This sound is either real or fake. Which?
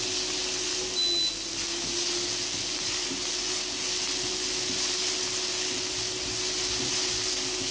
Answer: real